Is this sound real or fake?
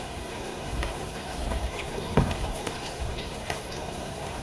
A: fake